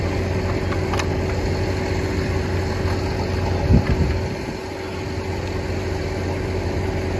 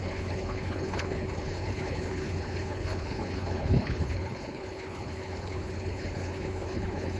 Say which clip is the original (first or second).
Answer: first